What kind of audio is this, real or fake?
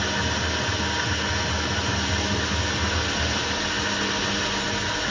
real